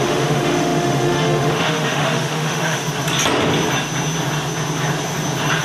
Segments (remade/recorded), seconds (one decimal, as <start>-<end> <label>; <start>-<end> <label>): 0.0-2.8 remade; 2.8-5.6 recorded